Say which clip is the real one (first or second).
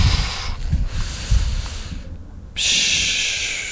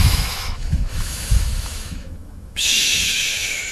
first